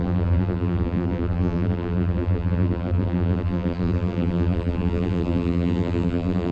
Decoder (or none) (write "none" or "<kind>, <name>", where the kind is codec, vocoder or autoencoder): vocoder, BigVGAN v2